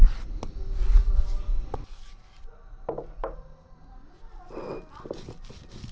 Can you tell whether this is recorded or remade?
recorded